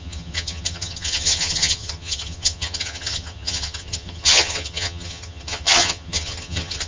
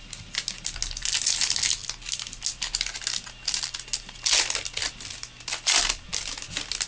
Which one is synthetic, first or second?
first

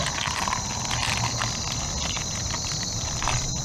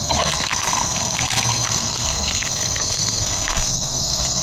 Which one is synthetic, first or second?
second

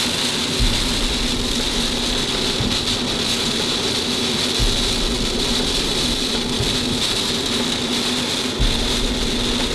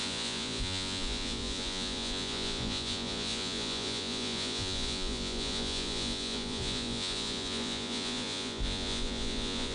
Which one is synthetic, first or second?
second